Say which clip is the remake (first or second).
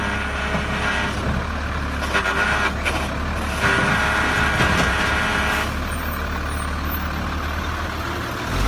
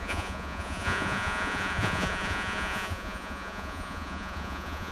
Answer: second